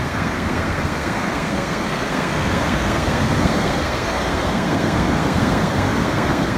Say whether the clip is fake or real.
fake